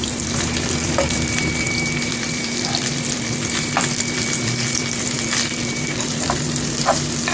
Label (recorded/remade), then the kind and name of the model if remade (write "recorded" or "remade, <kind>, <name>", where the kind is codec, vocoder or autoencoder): remade, vocoder, BigVGAN v2